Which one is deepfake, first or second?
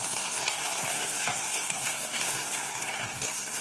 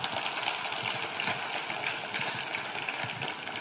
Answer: first